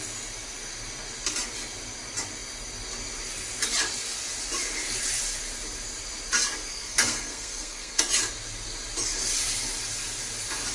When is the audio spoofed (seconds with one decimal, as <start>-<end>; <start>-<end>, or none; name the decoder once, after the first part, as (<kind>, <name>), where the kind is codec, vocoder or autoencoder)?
6.7-8.0 (codec, SNAC)

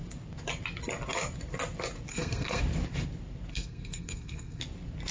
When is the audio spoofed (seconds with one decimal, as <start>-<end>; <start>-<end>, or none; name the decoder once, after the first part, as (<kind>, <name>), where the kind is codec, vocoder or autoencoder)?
2.1-2.6 (codec, SNAC); 3.5-4.6